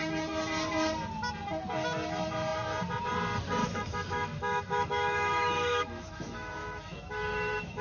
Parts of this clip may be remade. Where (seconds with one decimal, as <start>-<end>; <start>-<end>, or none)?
3.6-7.8